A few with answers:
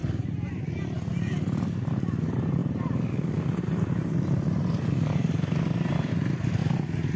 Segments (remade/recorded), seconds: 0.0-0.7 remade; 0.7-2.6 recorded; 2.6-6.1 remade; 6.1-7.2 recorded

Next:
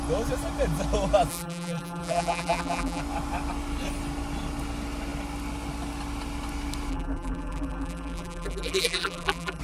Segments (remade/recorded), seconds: 0.0-1.3 recorded; 1.3-3.0 remade; 3.0-6.9 recorded; 6.9-9.6 remade

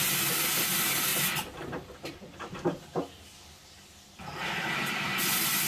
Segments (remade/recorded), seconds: 0.0-5.7 recorded